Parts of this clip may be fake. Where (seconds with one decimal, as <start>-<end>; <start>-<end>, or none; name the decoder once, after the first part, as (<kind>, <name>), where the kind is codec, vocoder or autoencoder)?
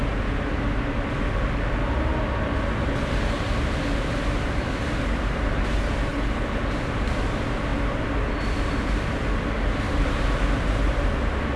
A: 6.1-6.6 (codec, HILCodec)